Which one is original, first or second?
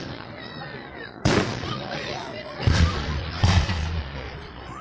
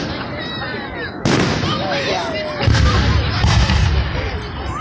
second